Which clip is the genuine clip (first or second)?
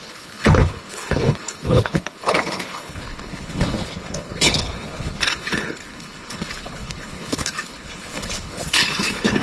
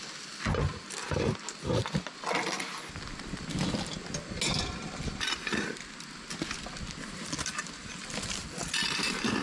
second